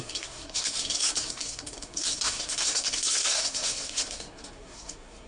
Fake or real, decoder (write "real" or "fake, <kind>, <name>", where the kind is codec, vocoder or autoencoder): fake, codec, SNAC